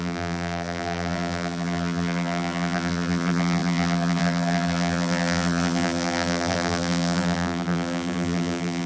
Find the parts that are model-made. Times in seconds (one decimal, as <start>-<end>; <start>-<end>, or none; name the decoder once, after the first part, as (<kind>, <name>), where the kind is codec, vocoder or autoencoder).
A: 0.0-8.9 (vocoder, BigVGAN v2)